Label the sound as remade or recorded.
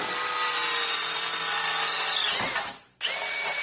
recorded